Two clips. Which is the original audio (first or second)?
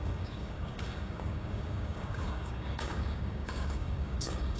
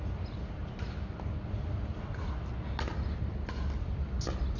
second